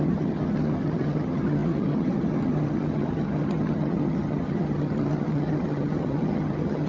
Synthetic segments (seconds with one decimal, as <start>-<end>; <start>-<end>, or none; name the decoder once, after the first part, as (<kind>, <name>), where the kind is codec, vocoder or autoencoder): 0.0-6.9 (vocoder, HiFi-GAN)